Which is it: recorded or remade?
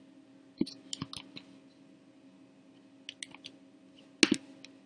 recorded